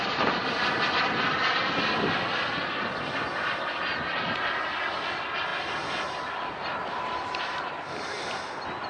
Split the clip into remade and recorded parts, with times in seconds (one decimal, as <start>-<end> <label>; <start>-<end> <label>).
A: 0.0-8.9 recorded